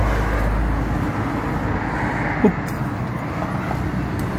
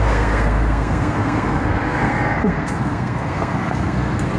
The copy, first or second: second